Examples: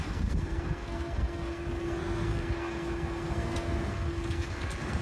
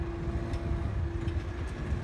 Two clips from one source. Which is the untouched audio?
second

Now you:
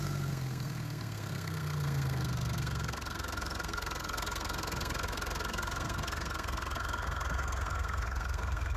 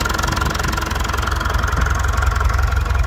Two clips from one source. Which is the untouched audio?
second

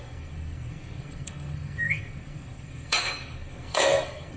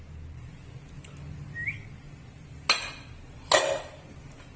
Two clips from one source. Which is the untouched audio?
second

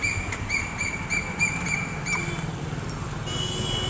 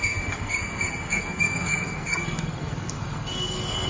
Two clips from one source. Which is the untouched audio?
first